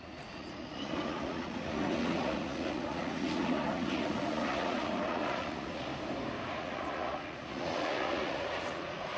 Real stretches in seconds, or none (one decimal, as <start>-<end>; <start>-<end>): 5.9-6.5